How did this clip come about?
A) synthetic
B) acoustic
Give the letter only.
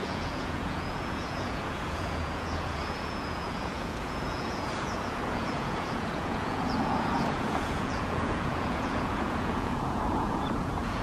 A